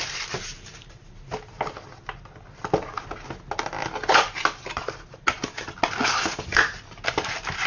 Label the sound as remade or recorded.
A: recorded